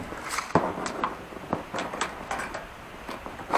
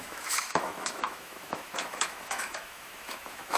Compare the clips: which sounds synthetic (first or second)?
second